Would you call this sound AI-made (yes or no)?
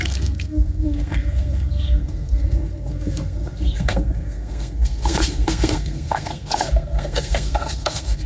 yes